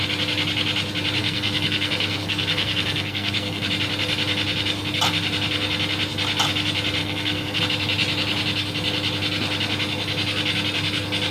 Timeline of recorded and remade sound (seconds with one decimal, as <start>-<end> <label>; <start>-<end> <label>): 0.0-1.2 recorded; 1.2-3.7 remade; 3.7-7.0 recorded; 7.0-7.6 remade; 7.6-11.3 recorded